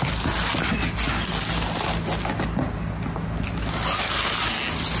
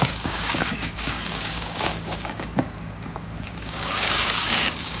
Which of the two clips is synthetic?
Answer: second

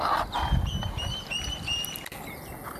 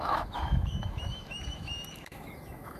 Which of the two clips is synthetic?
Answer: second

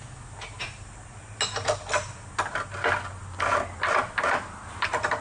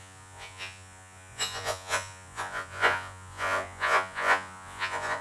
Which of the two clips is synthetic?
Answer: second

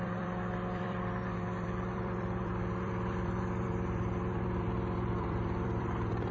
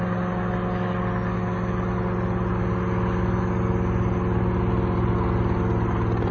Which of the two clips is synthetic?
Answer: first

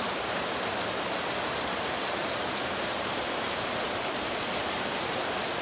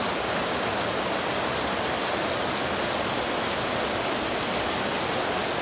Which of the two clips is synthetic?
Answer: first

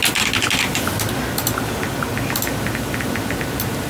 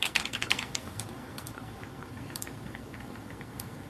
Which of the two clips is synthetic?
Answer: second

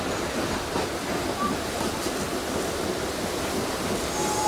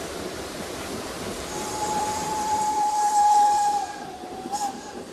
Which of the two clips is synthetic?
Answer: second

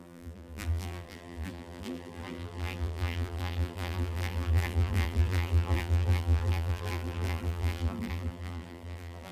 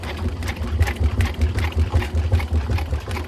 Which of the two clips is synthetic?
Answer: first